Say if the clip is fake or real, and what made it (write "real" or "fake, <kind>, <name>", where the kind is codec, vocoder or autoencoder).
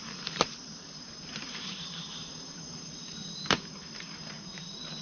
fake, vocoder, BigVGAN v2